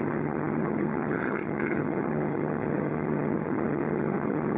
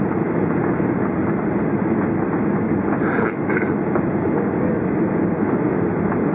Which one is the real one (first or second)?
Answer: second